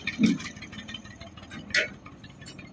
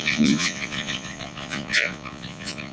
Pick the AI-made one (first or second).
second